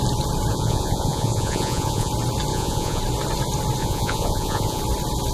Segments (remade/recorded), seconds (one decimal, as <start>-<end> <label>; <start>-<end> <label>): 0.0-0.5 recorded; 0.5-2.1 remade; 2.1-2.5 recorded; 2.5-3.0 remade; 3.0-3.8 recorded; 3.8-4.8 remade; 4.8-5.3 recorded

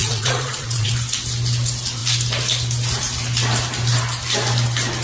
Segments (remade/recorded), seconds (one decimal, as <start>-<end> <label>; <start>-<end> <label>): 0.0-0.9 remade; 0.9-5.0 recorded